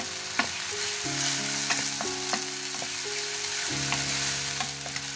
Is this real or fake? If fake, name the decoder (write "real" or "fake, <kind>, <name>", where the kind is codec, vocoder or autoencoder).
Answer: real